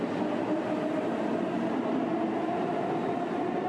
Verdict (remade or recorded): recorded